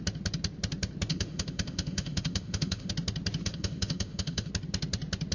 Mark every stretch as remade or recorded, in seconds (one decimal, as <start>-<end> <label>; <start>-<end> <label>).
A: 0.0-1.1 recorded; 1.1-2.9 remade; 2.9-3.4 recorded; 3.4-4.5 remade; 4.5-5.3 recorded